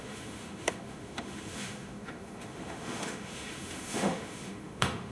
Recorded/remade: remade